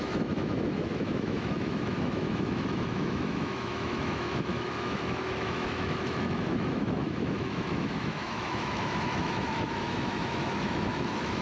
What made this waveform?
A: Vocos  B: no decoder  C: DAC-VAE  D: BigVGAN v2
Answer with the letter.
C